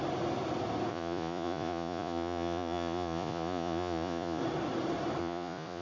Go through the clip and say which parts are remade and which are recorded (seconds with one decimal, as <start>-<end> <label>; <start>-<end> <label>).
0.0-0.9 recorded; 0.9-4.4 remade; 4.4-5.2 recorded; 5.2-5.8 remade